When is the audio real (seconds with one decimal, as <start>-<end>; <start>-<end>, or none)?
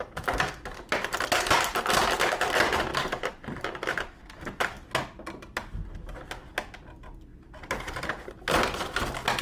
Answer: 0.0-2.9; 4.2-7.3; 8.4-9.4